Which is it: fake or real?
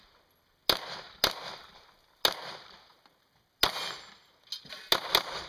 real